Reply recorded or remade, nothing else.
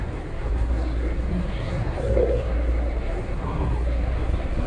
remade